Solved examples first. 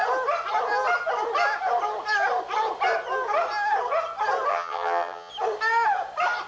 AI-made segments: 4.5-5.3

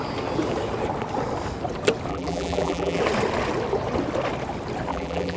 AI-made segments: 2.1-3.0; 4.9-5.4

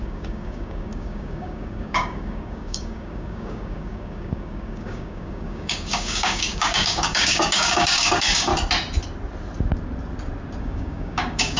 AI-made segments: 0.0-8.5; 10.6-11.6

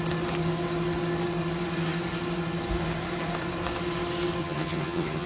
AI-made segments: 4.4-5.3

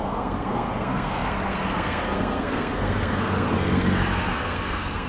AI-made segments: 0.0-5.1

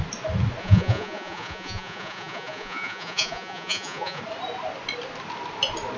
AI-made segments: 0.6-4.2